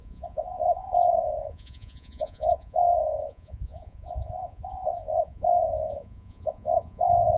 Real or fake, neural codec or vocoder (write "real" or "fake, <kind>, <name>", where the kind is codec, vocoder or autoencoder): fake, vocoder, Vocos